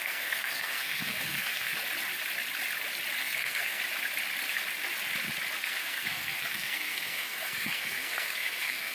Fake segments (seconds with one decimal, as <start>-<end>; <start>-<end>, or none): 0.0-1.7; 3.2-3.8; 5.6-8.9